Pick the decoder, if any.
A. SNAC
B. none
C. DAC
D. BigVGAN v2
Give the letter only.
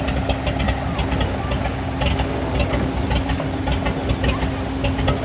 B